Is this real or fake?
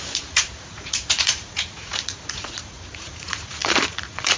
fake